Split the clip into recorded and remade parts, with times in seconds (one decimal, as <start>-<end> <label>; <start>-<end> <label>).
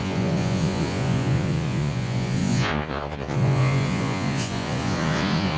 0.0-5.6 remade